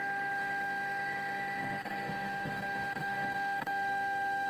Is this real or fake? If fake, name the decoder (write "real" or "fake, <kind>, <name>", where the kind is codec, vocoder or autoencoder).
fake, autoencoder, DAC-VAE